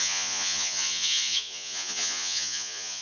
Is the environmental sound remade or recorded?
remade